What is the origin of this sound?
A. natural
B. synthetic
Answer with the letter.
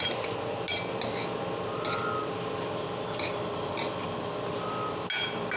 A